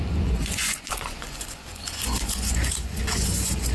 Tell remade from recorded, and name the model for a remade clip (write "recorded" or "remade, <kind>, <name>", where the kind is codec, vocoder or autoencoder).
remade, vocoder, Vocos